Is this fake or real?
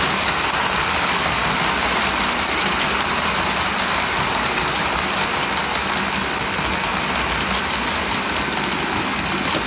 real